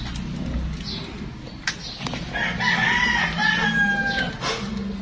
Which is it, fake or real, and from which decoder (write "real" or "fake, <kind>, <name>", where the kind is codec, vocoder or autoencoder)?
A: real